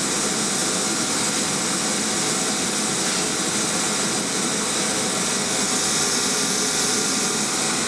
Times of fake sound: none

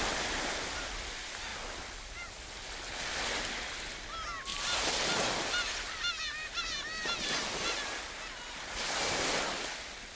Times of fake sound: none